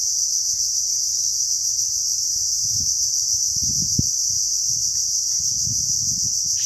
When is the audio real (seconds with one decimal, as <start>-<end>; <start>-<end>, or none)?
0.0-0.6; 2.2-5.5; 6.1-6.7